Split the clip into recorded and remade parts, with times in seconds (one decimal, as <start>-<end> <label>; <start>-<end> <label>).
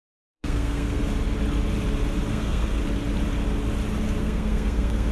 0.0-1.0 remade; 1.0-2.3 recorded; 2.3-2.8 remade; 2.8-4.2 recorded; 4.2-5.1 remade